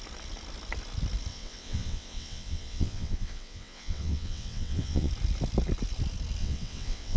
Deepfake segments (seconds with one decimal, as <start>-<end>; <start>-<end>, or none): 1.3-5.1; 6.4-7.2